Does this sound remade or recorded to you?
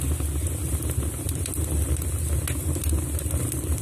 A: recorded